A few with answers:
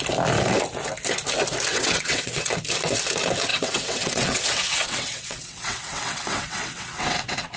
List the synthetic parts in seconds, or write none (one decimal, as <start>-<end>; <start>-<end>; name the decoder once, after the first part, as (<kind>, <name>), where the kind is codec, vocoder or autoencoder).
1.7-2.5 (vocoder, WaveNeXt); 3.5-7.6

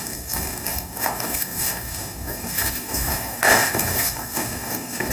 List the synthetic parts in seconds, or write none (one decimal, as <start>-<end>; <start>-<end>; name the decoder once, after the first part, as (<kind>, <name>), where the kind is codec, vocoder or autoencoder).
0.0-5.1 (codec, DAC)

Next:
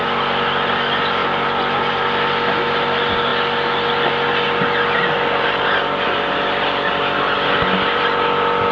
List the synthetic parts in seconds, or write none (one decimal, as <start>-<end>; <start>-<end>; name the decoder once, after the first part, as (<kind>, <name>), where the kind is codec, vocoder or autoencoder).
none